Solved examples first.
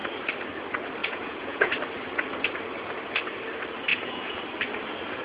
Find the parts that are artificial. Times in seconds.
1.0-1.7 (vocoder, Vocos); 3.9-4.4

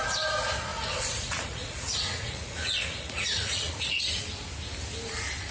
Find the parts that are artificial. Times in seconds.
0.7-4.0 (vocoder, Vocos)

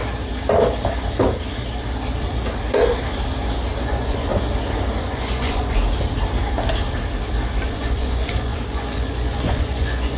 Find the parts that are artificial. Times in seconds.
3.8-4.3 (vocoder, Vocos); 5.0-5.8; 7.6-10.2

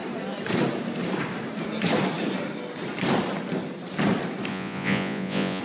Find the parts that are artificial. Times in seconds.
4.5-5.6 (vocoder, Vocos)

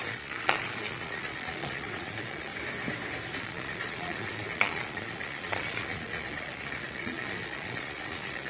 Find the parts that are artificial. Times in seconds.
0.0-2.5 (vocoder, Vocos); 3.3-8.5

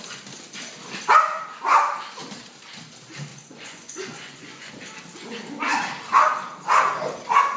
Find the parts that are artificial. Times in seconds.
3.3-4.7 (vocoder, Vocos)